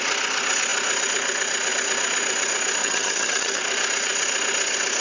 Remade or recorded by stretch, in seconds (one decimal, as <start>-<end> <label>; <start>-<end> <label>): 0.0-2.8 recorded; 2.8-3.6 remade; 3.6-5.0 recorded